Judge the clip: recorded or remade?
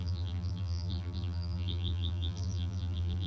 remade